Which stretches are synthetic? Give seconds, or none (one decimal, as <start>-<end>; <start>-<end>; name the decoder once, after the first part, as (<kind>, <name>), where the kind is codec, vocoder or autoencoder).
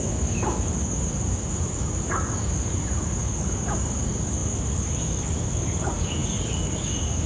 0.0-7.3 (codec, DAC)